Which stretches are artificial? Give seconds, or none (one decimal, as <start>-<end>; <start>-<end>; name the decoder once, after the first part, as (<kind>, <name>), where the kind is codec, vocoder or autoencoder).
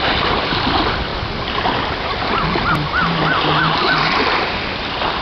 none